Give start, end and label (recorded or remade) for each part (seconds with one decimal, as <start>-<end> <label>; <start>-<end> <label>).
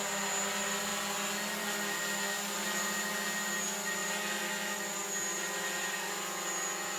0.0-7.0 recorded